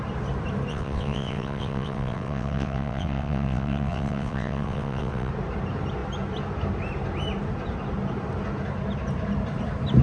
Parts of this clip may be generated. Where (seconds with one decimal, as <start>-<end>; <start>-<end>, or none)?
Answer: 0.7-5.3